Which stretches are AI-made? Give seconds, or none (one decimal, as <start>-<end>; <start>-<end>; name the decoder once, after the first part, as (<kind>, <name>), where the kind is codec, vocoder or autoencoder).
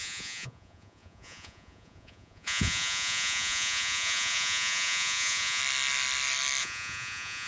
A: 0.0-5.6 (vocoder, Vocos); 6.6-7.5